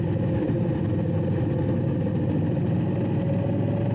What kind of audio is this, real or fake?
real